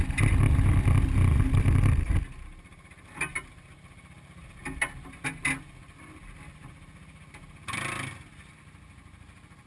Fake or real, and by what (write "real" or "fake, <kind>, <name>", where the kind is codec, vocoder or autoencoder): real